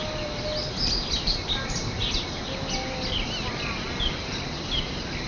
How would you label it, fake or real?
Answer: real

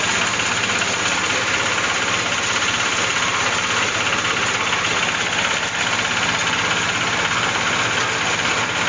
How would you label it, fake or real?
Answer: real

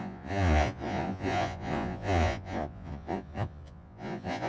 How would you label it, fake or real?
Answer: fake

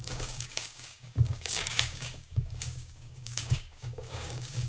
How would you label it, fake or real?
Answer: fake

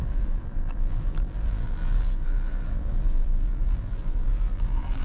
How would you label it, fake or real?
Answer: fake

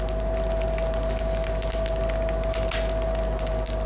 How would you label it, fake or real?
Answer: real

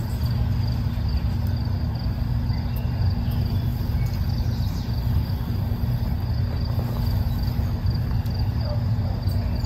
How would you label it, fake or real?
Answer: real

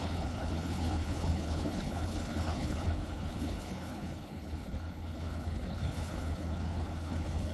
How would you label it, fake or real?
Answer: fake